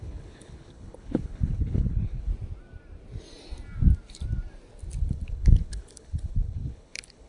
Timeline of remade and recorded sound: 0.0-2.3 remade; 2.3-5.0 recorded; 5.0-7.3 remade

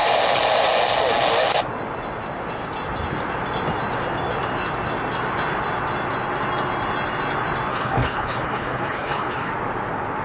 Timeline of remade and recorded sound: 0.0-7.7 recorded; 7.7-9.5 remade; 9.5-10.2 recorded

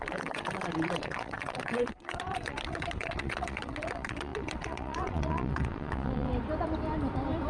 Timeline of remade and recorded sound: 0.0-6.3 remade; 6.3-7.5 recorded

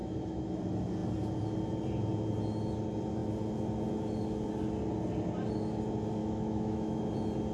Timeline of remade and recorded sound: 0.0-0.6 remade; 0.6-6.2 recorded; 6.2-7.0 remade; 7.0-7.5 recorded

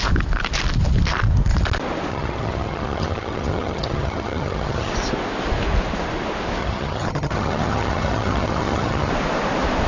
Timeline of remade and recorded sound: 0.0-2.1 recorded; 2.1-4.9 remade; 4.9-6.6 recorded; 6.6-9.1 remade; 9.1-9.9 recorded

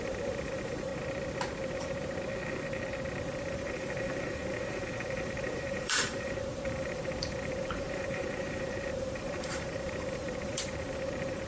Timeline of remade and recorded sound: 0.0-0.9 remade; 0.9-3.2 recorded; 3.2-11.5 remade

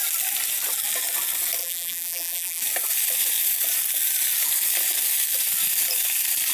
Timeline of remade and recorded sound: 0.0-1.6 recorded; 1.6-2.6 remade; 2.6-6.5 recorded